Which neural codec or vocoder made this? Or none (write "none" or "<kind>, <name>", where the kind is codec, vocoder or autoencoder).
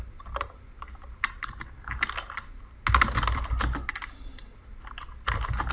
none